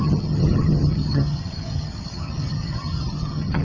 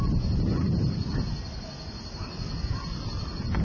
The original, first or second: second